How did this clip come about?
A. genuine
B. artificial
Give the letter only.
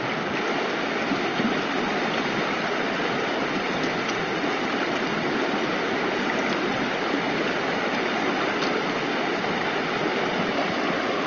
A